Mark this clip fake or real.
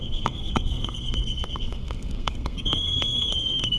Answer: fake